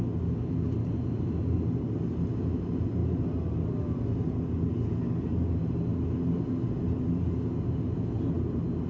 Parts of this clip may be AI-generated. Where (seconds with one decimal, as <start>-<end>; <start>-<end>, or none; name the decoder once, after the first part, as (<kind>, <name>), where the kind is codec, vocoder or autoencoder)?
none